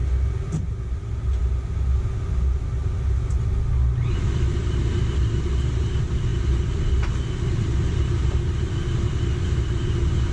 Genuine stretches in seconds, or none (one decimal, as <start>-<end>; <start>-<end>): 0.0-10.3